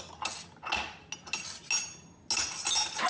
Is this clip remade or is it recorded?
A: recorded